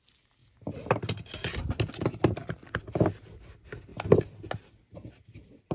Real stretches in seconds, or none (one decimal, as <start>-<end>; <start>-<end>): 0.0-5.7